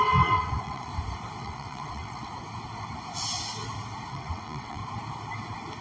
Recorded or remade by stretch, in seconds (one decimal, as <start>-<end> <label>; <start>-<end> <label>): 0.0-0.9 remade; 0.9-1.4 recorded; 1.4-2.3 remade; 2.3-4.1 recorded; 4.1-4.8 remade; 4.8-5.8 recorded